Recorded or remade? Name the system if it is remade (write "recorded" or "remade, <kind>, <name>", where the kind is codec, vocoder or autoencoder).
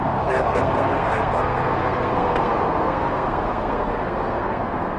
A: remade, codec, SNAC